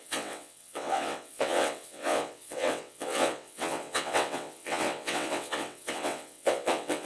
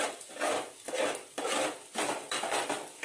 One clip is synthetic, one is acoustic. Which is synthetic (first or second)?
first